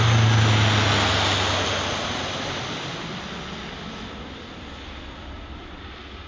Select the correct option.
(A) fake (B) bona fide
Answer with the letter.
B